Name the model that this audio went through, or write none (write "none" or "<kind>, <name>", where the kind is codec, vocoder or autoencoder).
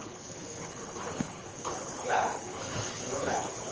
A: codec, HILCodec